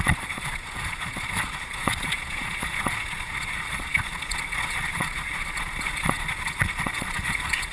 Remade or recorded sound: remade